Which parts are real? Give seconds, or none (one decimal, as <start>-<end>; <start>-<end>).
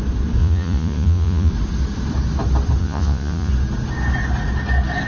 0.0-0.4; 1.5-2.8; 3.5-5.1